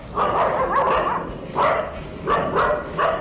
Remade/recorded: recorded